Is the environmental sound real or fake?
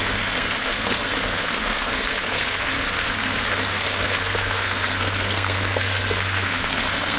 fake